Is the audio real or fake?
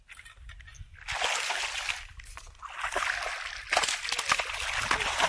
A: real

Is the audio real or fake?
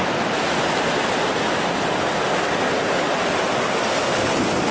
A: real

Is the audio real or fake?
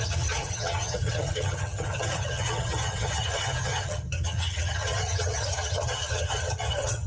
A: fake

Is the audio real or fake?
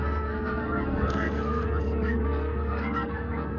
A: fake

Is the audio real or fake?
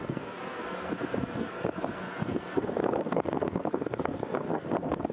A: fake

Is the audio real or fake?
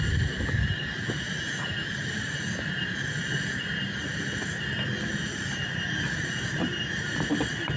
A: real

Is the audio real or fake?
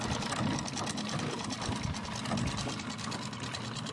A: real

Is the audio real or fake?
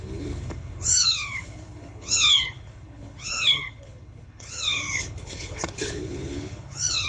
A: fake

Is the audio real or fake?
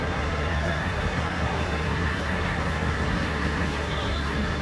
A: fake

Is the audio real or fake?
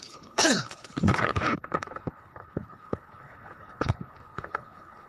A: fake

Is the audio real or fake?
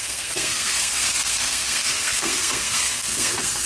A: fake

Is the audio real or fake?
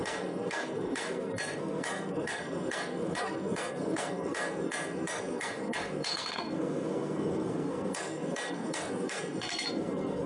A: fake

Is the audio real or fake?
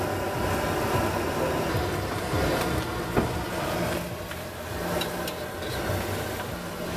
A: real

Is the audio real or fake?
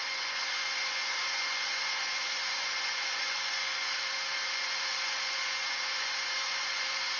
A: fake